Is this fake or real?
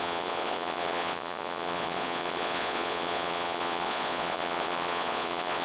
fake